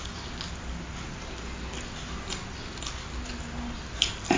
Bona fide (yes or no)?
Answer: yes